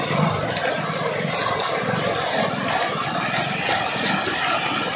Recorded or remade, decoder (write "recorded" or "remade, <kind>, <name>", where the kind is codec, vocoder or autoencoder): recorded